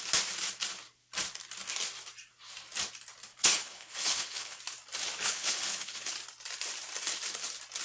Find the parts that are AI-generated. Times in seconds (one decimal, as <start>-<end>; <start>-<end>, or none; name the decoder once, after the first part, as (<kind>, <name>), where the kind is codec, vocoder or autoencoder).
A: 3.3-4.6 (codec, HILCodec); 5.2-6.1